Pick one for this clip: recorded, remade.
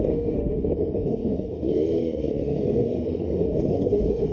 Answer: remade